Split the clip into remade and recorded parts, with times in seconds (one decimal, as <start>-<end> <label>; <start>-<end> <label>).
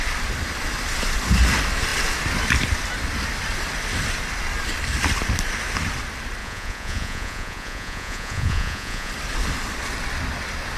0.0-6.4 recorded; 6.4-9.1 remade; 9.1-10.8 recorded